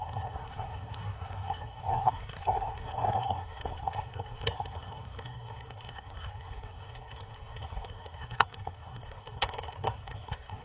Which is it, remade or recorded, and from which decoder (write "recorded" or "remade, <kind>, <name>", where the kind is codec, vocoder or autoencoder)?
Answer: remade, codec, SNAC